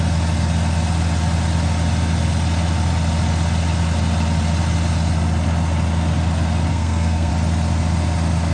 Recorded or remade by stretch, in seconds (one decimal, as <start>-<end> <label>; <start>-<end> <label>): 0.0-6.7 recorded; 6.7-7.3 remade; 7.3-8.5 recorded